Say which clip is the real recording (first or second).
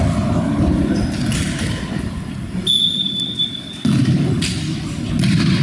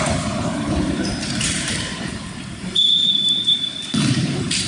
first